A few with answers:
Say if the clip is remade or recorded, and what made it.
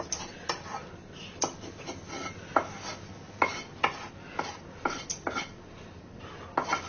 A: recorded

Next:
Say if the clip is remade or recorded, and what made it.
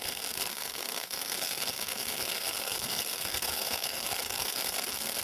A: remade, codec, SNAC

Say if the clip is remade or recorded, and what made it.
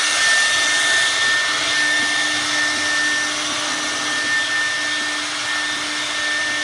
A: recorded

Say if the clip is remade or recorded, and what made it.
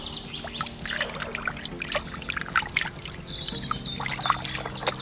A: recorded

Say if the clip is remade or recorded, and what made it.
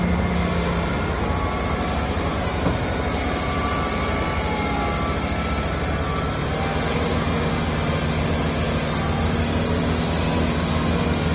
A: recorded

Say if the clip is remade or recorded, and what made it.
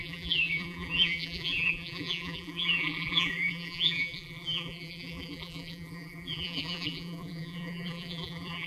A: remade, vocoder, BigVGAN v2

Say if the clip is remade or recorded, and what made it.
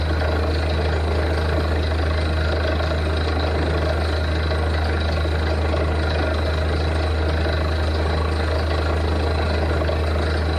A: recorded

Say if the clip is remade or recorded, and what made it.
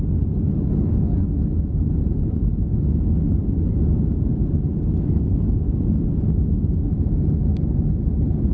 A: recorded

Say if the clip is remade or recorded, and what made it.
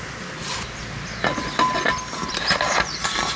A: recorded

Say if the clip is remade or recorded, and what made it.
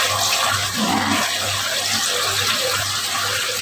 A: recorded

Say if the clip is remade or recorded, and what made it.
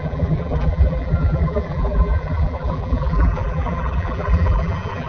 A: remade, vocoder, BigVGAN v2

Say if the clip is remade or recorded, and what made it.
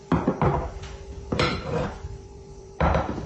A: remade, vocoder, BigVGAN v2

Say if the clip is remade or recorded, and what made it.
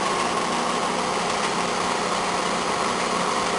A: recorded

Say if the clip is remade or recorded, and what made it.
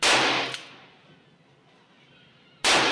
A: recorded